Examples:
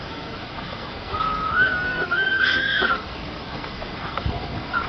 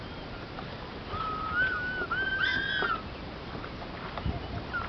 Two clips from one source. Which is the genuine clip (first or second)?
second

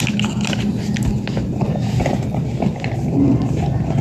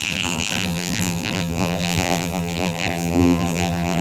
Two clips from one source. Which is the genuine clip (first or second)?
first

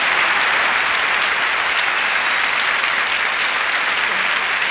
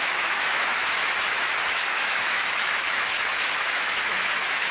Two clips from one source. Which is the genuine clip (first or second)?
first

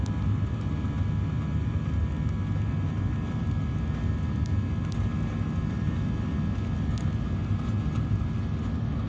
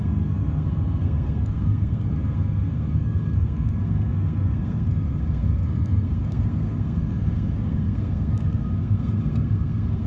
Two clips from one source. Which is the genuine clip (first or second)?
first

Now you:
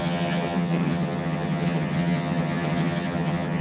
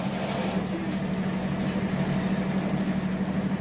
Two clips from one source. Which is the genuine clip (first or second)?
second